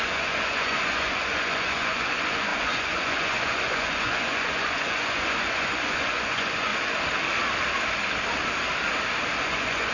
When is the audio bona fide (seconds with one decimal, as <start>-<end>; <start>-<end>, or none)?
6.7-9.4